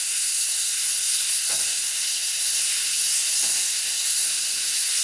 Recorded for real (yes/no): no